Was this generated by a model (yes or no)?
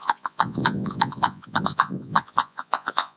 yes